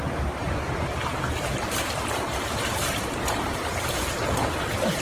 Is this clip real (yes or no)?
no